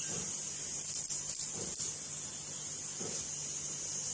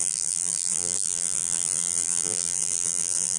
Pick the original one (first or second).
first